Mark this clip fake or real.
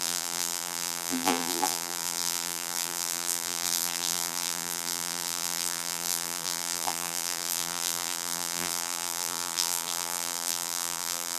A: fake